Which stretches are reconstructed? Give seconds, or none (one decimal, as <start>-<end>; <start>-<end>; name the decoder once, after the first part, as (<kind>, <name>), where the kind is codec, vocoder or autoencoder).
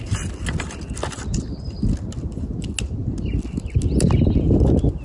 none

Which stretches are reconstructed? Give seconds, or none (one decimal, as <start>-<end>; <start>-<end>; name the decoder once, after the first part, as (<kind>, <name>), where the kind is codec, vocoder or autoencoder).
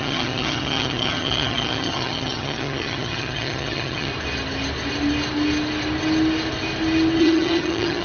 0.0-4.1 (vocoder, HiFi-GAN); 7.2-8.0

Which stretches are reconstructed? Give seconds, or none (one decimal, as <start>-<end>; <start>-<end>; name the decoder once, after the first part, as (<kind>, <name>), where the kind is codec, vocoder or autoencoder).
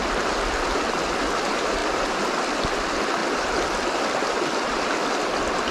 none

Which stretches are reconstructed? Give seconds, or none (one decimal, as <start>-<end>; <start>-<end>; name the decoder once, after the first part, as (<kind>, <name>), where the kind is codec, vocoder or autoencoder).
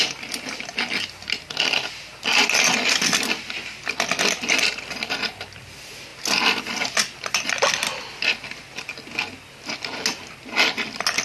none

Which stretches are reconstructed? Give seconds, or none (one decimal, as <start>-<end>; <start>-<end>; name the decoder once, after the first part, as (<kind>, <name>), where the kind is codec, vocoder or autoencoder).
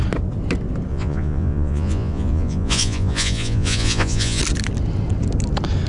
0.9-4.4 (vocoder, Vocos)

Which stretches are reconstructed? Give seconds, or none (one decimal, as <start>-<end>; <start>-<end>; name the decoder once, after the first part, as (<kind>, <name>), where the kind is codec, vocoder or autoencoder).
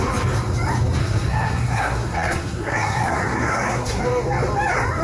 1.0-4.0 (codec, SNAC)